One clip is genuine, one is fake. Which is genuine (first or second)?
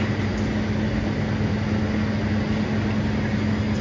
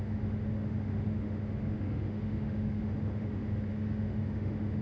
first